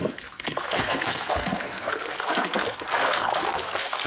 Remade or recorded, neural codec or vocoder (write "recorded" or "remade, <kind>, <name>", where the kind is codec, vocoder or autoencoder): remade, codec, SNAC